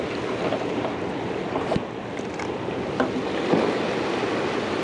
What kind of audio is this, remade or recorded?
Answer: recorded